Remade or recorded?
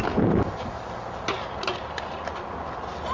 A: recorded